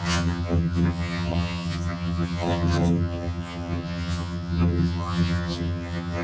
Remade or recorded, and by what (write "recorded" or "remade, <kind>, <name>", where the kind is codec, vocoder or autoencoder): remade, vocoder, HiFi-GAN